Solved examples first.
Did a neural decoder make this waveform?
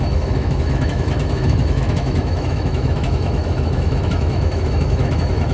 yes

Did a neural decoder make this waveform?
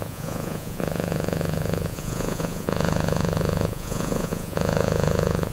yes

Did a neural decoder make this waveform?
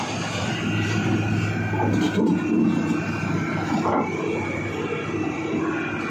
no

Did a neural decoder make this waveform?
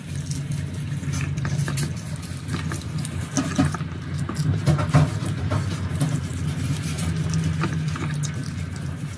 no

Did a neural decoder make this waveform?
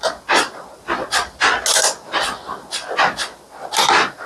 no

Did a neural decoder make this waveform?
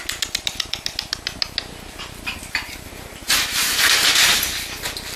no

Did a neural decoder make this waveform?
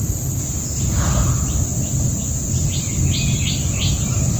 no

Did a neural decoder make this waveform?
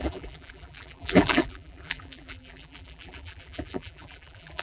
yes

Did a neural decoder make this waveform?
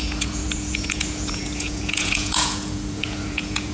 yes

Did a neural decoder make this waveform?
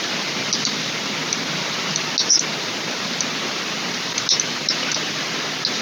no